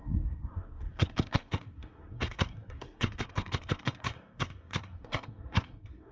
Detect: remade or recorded remade